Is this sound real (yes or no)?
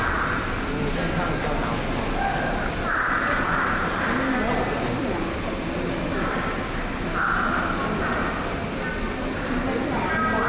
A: yes